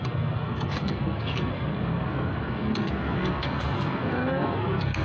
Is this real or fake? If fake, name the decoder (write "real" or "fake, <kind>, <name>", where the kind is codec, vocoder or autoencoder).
fake, codec, SNAC